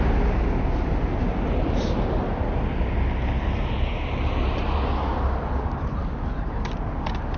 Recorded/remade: recorded